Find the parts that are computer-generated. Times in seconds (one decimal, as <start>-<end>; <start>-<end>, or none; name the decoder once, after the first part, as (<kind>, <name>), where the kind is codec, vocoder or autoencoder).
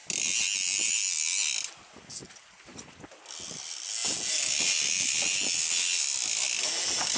none